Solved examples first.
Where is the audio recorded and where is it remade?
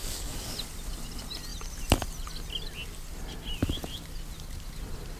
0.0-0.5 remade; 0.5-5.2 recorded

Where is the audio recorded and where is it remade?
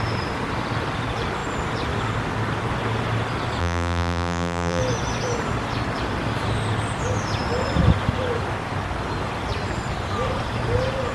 0.0-3.6 recorded; 3.6-4.8 remade; 4.8-11.1 recorded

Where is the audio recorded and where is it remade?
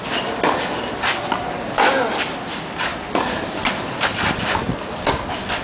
0.0-5.6 recorded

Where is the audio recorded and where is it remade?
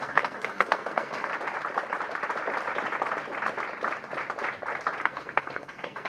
0.0-1.3 remade; 1.3-5.0 recorded; 5.0-6.1 remade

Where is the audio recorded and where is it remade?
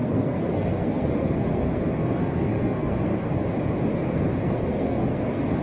0.0-3.4 remade; 3.4-3.9 recorded; 3.9-5.6 remade